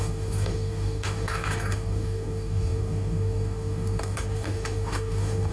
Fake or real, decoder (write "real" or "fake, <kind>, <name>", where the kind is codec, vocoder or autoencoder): fake, codec, DAC